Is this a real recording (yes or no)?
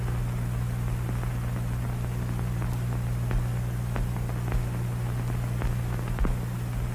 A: yes